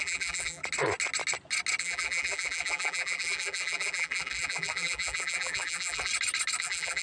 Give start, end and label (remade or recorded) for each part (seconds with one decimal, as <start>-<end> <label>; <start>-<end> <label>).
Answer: 0.0-0.6 remade; 0.6-1.8 recorded; 1.8-6.1 remade; 6.1-6.6 recorded; 6.6-7.0 remade